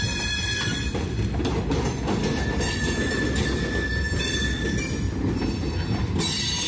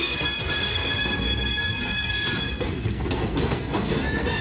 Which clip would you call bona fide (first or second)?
first